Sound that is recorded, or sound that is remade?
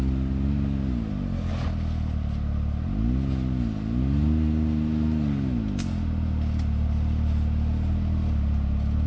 recorded